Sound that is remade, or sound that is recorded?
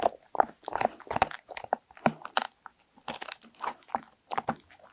recorded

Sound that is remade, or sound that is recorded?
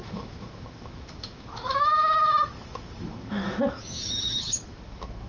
remade